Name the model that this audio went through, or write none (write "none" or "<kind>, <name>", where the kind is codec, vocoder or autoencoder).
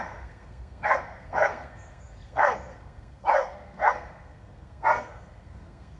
codec, SNAC